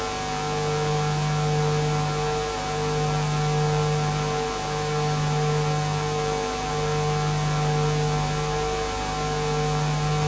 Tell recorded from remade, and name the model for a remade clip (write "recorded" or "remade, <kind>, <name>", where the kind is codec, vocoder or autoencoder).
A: recorded